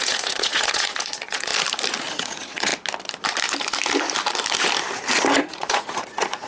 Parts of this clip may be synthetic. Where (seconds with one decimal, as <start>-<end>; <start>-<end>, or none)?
0.0-1.5; 2.1-2.7; 5.4-6.5